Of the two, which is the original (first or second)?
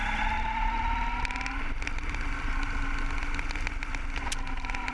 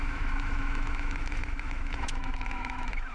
first